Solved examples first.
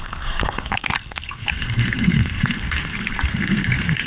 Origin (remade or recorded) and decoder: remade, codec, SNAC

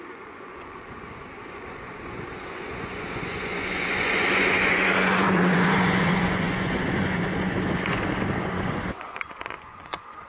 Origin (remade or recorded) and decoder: remade, vocoder, Vocos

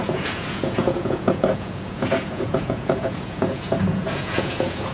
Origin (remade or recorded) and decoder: remade, vocoder, Vocos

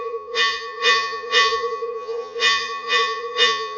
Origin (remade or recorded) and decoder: remade, vocoder, Vocos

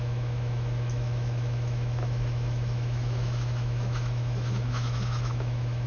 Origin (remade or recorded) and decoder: remade, autoencoder, DAC-VAE